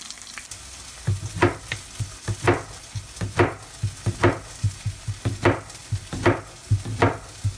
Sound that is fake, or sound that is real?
real